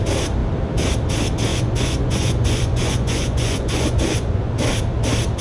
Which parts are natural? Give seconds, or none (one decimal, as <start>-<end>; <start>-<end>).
0.0-1.5; 4.5-5.4